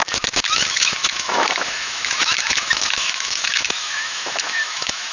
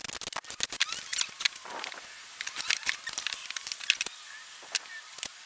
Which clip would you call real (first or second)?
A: second